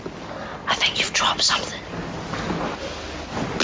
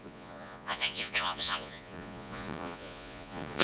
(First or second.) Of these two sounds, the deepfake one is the second